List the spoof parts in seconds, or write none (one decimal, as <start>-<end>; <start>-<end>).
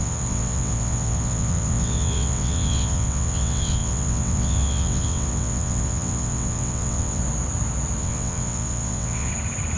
0.0-7.2; 8.0-9.3